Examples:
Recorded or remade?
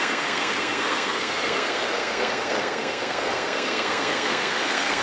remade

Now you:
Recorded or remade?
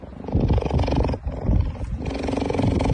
recorded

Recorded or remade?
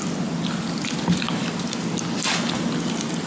recorded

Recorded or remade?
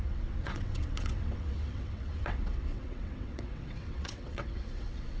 remade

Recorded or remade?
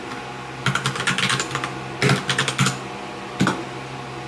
recorded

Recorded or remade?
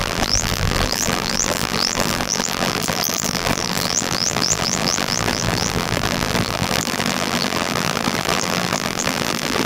remade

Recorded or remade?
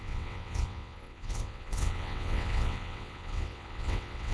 remade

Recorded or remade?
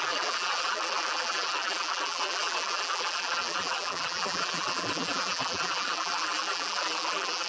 remade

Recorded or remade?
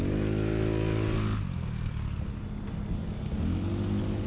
recorded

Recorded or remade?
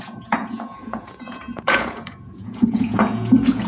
remade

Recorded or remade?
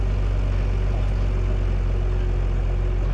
recorded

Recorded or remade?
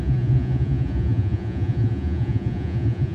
remade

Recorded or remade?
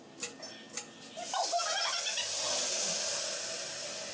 recorded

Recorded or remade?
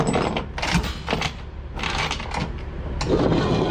recorded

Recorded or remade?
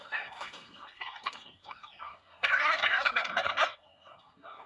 remade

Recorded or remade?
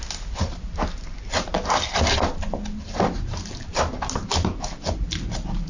recorded